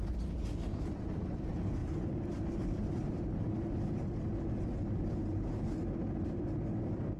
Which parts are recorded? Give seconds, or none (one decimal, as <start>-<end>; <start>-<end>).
0.0-7.2